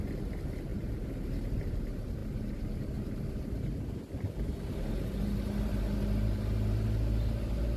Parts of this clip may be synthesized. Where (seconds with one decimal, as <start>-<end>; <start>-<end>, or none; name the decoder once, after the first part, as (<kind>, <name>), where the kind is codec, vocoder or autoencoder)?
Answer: 0.7-1.7 (vocoder, BigVGAN v2)